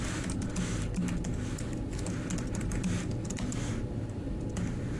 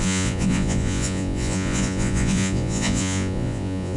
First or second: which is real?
first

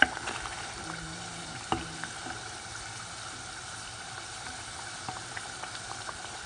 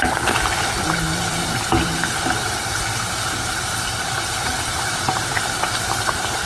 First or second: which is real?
first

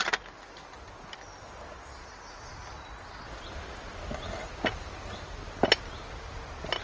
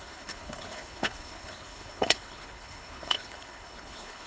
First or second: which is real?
first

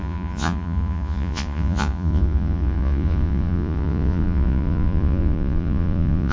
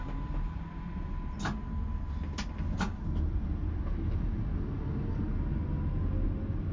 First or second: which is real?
second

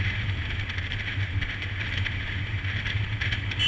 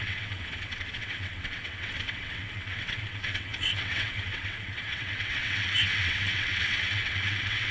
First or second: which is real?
first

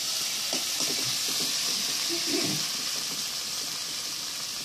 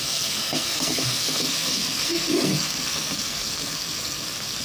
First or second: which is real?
first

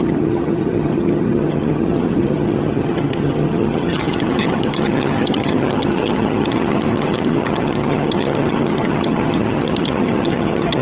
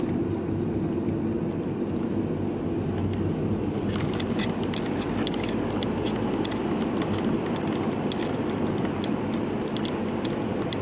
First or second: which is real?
second